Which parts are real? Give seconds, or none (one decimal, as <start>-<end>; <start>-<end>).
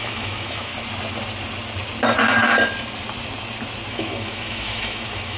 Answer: 0.7-3.9